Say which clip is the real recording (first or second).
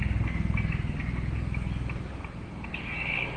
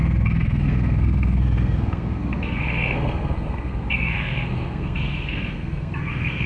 first